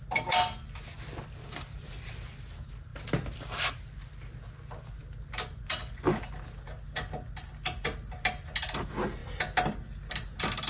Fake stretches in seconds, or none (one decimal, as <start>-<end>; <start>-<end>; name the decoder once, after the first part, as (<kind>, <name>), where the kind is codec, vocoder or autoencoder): none